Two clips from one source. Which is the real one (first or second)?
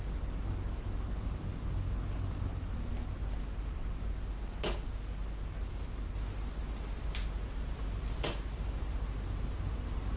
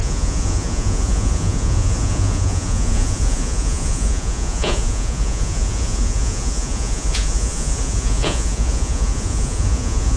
first